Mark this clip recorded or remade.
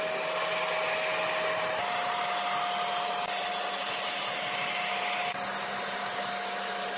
recorded